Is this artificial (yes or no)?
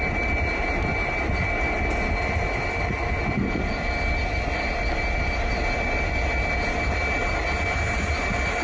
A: no